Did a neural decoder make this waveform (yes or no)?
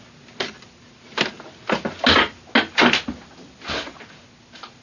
no